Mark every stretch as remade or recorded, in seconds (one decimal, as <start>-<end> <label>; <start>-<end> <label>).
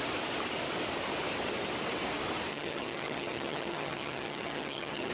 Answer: 0.0-2.5 recorded; 2.5-5.1 remade